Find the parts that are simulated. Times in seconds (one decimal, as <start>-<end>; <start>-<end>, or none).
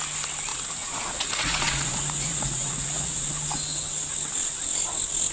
0.5-3.3